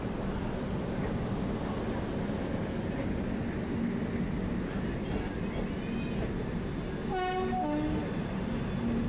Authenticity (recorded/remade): recorded